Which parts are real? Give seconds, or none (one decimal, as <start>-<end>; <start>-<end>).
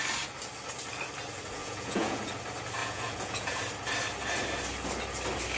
0.0-1.6; 2.3-2.8; 3.6-5.6